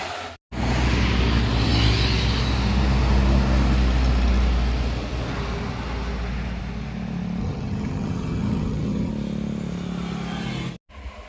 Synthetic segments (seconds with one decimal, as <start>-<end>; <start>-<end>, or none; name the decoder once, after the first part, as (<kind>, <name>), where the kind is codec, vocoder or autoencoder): 7.4-9.1 (vocoder, HiFi-GAN)